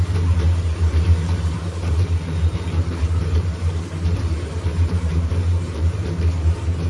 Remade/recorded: remade